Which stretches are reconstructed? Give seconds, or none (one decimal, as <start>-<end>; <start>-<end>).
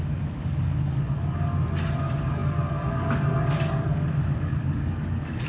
0.0-1.5; 2.0-5.5